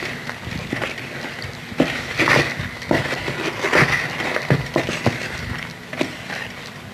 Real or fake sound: real